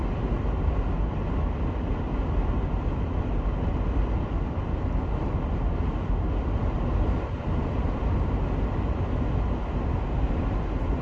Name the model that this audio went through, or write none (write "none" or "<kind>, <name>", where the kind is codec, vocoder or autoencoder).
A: none